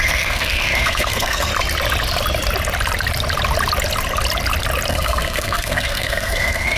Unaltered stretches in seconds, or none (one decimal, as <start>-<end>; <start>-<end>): 1.5-4.9

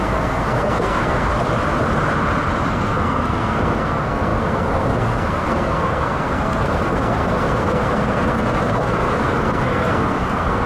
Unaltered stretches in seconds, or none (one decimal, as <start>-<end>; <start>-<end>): 1.3-2.7

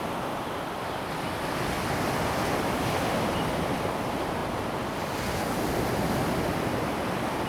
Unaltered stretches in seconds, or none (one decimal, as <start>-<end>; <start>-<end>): 0.0-7.5